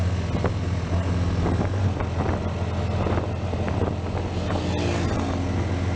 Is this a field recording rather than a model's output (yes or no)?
yes